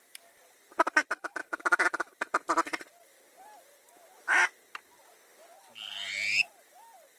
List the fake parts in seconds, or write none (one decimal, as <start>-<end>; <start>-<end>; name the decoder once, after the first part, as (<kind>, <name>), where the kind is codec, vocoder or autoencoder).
none

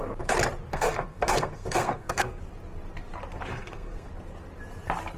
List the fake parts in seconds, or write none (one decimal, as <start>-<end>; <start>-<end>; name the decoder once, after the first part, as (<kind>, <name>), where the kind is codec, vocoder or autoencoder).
0.7-2.4 (codec, SNAC); 3.5-4.1